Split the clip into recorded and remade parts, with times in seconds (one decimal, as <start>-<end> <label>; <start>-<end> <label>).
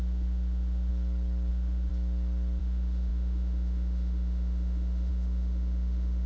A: 0.0-0.9 remade; 0.9-1.5 recorded; 1.5-1.9 remade; 1.9-2.6 recorded; 2.6-6.3 remade